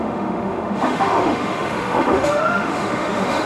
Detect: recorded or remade remade